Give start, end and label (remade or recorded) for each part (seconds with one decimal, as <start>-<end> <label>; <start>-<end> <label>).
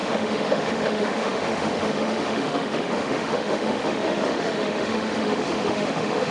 0.0-6.3 remade